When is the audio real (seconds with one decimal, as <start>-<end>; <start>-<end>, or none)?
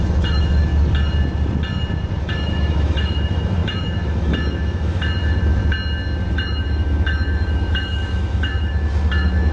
0.7-2.2; 5.6-6.3